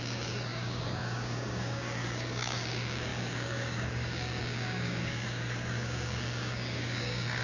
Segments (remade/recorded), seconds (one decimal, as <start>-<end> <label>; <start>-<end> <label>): 0.0-7.4 remade